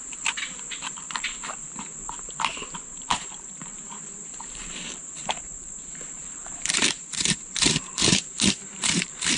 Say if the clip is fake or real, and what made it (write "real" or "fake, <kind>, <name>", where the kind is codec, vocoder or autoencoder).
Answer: fake, vocoder, BigVGAN v2